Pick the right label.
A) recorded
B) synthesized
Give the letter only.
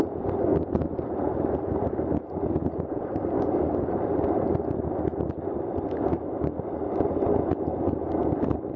A